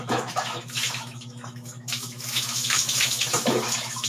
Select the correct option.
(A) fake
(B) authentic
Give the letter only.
A